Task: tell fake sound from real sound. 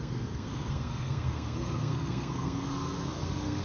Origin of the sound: fake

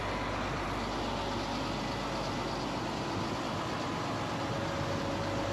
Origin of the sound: real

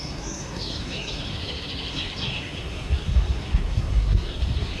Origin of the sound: fake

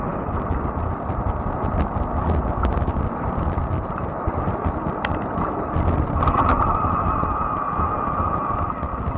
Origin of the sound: real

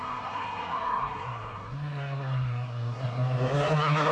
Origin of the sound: fake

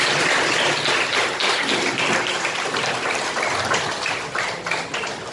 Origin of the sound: real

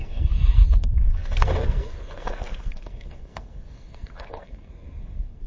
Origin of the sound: fake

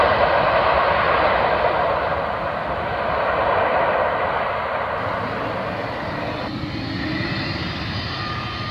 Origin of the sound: real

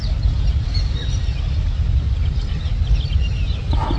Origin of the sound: real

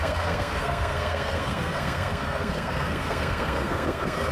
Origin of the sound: fake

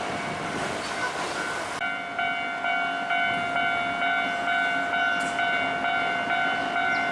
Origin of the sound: real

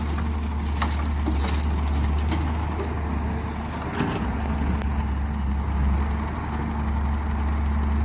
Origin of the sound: real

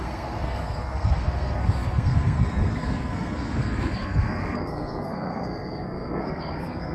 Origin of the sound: fake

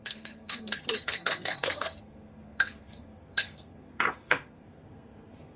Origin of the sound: fake